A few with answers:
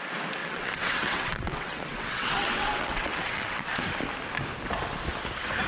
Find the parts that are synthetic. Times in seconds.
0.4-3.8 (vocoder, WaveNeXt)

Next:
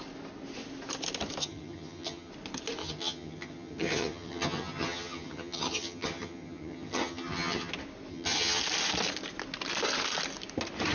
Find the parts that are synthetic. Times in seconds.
1.4-2.3 (vocoder, HiFi-GAN); 2.8-7.7; 8.1-8.6

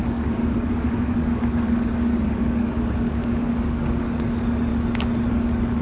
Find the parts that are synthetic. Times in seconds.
0.0-4.7 (codec, DAC); 5.3-5.8